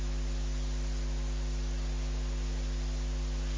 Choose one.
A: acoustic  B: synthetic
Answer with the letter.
A